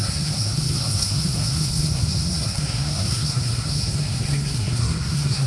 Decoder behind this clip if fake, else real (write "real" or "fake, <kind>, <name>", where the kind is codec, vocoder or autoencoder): fake, codec, SNAC